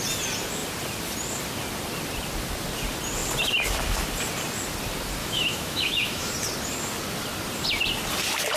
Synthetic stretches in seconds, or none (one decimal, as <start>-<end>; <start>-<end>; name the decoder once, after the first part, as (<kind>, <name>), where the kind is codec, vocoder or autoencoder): 5.2-6.3 (autoencoder, DAC-VAE)